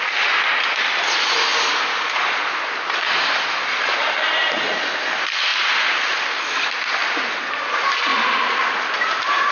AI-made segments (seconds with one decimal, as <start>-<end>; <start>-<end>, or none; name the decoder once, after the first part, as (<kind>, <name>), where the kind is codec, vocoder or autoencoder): 1.5-4.1 (vocoder, BigVGAN v2); 5.5-7.4; 8.1-9.5